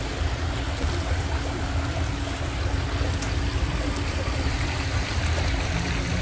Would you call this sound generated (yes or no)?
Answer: no